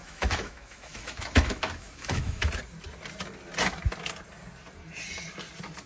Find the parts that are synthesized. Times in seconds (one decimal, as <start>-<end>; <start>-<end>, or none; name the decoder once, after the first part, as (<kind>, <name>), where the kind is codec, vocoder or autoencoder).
0.0-2.5 (autoencoder, DAC-VAE)

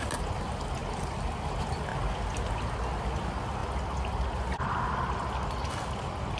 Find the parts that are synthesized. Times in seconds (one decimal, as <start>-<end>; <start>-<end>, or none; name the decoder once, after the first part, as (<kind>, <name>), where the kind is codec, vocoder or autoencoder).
none

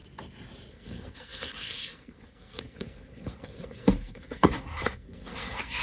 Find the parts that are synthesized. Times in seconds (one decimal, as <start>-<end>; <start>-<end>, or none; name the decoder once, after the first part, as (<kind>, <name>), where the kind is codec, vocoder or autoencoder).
0.7-5.8 (codec, SNAC)

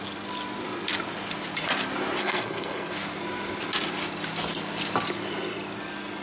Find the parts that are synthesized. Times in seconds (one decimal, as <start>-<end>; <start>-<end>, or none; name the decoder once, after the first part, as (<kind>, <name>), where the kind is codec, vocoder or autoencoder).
2.2-2.9 (codec, SNAC)

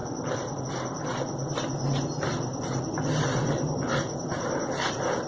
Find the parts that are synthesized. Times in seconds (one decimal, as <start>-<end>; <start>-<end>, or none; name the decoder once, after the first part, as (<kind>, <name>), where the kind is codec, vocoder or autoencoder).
none

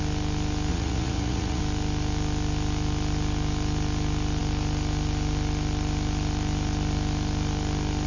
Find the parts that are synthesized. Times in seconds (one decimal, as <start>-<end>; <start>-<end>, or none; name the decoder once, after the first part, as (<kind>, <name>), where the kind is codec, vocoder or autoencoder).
0.7-1.6 (vocoder, Vocos)

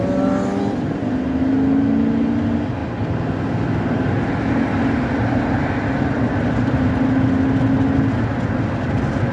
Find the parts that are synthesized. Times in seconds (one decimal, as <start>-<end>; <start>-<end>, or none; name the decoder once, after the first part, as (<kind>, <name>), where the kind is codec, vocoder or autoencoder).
none